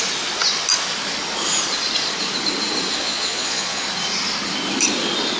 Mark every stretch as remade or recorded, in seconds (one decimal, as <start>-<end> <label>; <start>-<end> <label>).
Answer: 0.0-3.0 recorded; 3.0-3.8 remade; 3.8-5.4 recorded